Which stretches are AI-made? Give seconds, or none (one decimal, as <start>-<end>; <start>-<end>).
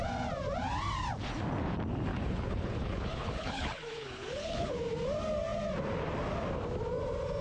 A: 2.1-4.8